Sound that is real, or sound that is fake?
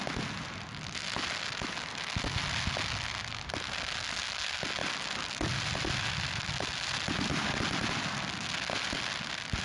real